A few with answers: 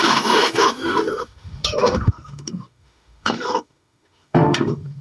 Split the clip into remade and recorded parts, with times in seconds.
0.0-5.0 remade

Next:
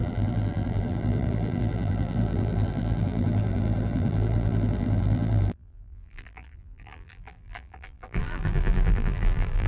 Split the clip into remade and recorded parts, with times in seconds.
0.0-9.7 remade

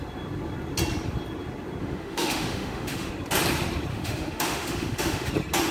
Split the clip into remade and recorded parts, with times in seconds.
0.0-1.8 recorded; 1.8-3.1 remade; 3.1-3.9 recorded; 3.9-5.3 remade; 5.3-5.7 recorded

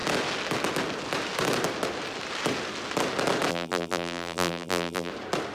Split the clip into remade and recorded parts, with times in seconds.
0.0-3.5 recorded; 3.5-5.1 remade; 5.1-5.5 recorded

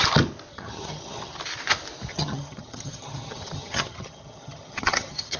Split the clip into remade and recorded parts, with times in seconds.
0.0-0.5 recorded; 0.5-1.4 remade; 1.4-2.1 recorded; 2.1-5.4 remade

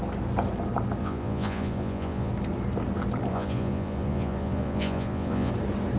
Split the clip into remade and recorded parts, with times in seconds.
0.0-1.0 recorded; 1.0-2.3 remade; 2.3-3.3 recorded; 3.3-5.5 remade; 5.5-6.0 recorded